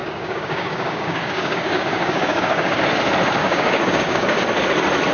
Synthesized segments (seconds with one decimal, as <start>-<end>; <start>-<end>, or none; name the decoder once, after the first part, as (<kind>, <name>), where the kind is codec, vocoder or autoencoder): 0.0-2.8 (codec, DAC); 3.4-4.4